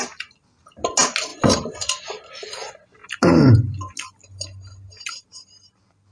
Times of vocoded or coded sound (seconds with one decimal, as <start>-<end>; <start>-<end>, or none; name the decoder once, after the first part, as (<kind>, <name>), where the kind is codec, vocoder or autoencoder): none